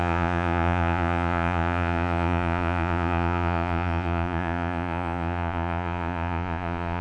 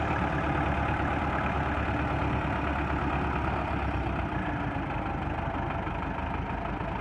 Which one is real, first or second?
second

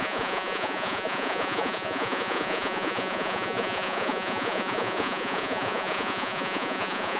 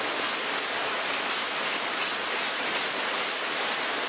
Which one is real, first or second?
second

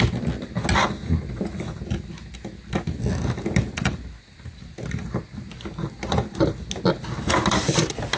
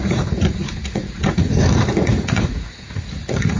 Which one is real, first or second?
first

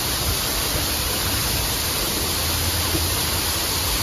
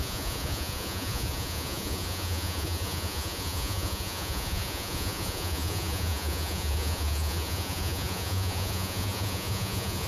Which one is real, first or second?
first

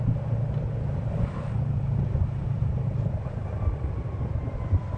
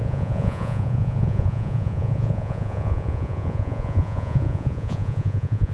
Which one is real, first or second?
first